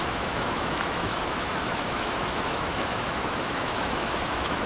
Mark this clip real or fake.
fake